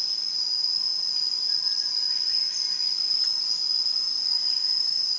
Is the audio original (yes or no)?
yes